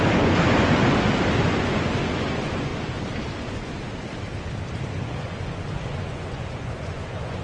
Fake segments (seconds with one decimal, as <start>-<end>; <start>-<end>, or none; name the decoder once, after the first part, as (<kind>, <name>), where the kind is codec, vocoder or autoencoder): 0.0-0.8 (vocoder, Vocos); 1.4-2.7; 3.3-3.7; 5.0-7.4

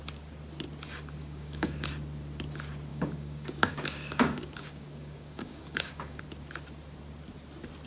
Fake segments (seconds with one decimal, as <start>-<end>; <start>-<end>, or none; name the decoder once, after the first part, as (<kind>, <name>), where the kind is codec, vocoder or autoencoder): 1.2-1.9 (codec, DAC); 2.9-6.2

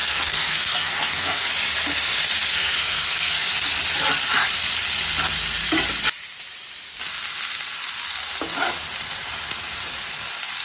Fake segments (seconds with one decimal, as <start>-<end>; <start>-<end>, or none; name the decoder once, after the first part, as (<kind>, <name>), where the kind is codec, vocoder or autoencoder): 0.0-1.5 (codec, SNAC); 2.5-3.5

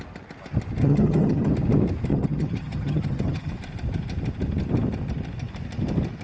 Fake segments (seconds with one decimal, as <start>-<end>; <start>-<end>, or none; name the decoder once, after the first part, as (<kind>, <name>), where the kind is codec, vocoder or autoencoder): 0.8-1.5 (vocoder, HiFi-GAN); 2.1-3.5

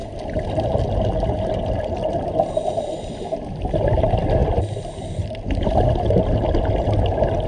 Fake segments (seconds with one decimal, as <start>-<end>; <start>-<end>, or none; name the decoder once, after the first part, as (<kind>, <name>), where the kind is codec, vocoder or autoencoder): 4.4-5.4 (vocoder, BigVGAN v2)

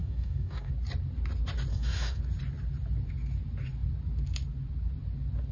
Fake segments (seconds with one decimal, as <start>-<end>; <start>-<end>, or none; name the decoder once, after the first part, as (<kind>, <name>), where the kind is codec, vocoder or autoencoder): 0.0-0.7 (codec, DAC); 1.7-2.2

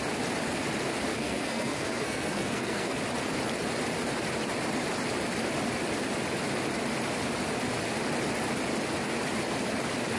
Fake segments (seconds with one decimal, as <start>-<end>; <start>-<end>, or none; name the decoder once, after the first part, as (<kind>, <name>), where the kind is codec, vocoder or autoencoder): 1.1-3.0 (codec, SNAC)

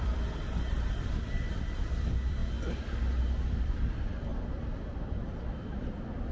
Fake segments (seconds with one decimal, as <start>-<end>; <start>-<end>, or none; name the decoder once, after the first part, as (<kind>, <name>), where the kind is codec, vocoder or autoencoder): 0.0-2.4 (vocoder, BigVGAN v2); 3.5-4.3; 5.4-6.3